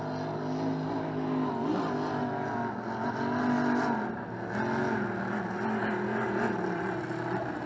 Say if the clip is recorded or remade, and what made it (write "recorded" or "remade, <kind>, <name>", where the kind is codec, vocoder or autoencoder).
recorded